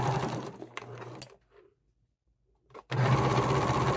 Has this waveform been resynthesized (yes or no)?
no